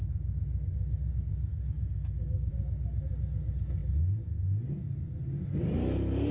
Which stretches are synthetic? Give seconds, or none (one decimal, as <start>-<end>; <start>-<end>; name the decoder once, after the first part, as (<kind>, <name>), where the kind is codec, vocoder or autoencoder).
1.5-2.5 (codec, DAC)